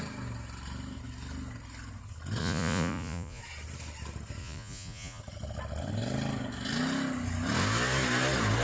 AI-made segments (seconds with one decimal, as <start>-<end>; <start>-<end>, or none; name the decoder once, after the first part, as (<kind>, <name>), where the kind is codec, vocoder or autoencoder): 2.4-3.4 (vocoder, Vocos); 4.4-5.2